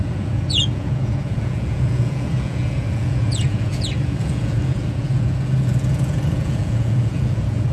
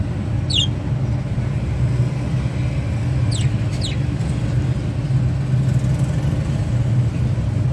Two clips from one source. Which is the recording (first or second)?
second